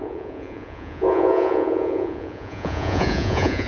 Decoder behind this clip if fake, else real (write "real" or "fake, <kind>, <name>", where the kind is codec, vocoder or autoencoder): fake, vocoder, Vocos